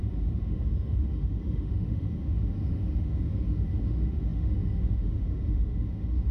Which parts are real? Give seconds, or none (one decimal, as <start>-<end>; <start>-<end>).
none